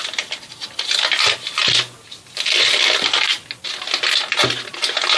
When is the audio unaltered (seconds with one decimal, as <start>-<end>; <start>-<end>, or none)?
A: 0.0-5.2